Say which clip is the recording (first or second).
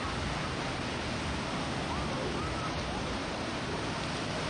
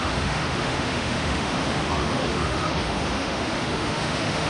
first